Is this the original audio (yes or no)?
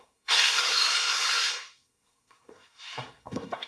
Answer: no